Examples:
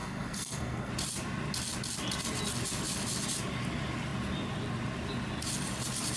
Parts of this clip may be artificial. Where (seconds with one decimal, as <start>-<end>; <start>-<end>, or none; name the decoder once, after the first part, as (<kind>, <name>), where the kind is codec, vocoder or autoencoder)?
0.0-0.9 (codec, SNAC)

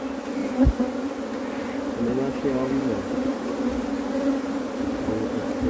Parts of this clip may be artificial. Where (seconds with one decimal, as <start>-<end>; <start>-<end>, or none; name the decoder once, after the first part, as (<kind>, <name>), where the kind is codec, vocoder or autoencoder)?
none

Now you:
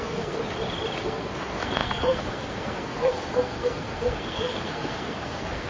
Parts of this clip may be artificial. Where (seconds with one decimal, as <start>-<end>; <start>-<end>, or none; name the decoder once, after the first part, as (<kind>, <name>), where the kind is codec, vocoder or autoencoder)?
0.0-0.4 (codec, SNAC); 1.0-5.7

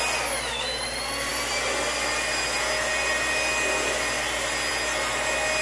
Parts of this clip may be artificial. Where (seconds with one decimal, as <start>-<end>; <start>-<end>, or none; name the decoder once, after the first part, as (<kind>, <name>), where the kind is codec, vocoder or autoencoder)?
none

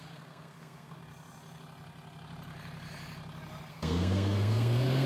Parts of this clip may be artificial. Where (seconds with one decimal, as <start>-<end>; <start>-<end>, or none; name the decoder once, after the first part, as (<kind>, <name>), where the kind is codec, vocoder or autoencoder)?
0.0-1.0 (codec, SNAC); 3.7-5.1

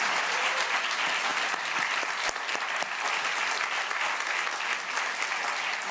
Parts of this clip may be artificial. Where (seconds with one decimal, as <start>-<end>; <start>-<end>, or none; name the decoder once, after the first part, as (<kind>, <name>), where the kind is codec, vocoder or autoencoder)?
none

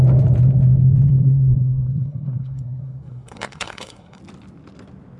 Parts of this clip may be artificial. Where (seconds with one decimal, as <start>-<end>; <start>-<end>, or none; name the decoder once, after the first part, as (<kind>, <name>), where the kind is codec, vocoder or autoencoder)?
1.1-4.2 (codec, SNAC)